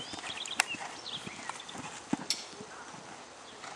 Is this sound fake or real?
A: real